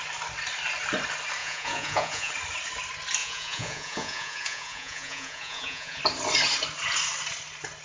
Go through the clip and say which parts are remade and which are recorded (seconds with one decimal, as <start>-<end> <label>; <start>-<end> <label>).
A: 0.0-1.4 recorded; 1.4-2.3 remade; 2.3-3.2 recorded; 3.2-6.0 remade; 6.0-7.8 recorded